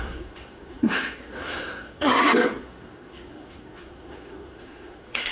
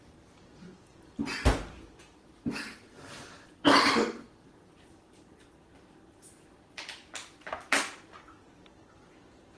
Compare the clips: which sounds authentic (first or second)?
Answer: second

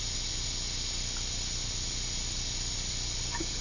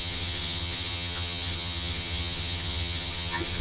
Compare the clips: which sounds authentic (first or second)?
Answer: first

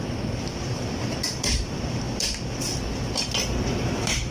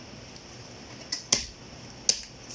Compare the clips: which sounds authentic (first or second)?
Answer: second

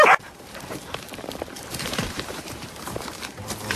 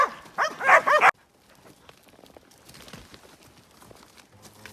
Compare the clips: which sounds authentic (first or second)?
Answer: second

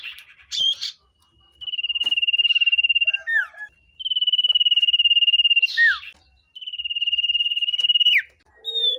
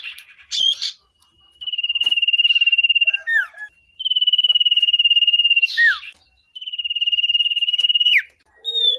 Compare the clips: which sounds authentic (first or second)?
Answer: first